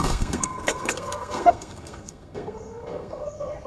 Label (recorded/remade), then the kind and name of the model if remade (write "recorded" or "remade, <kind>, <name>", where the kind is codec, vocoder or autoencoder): remade, codec, SNAC